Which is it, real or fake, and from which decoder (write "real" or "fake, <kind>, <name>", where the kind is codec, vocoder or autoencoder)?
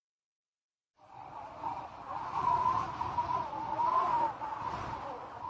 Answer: real